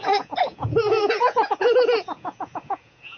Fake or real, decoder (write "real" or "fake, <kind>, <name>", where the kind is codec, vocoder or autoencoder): fake, vocoder, Vocos